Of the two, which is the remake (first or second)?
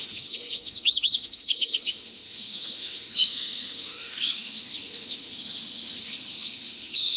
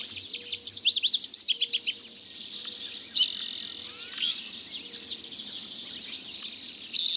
first